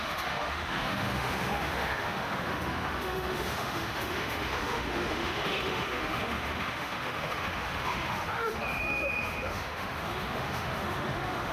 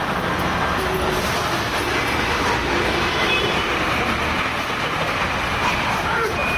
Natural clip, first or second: second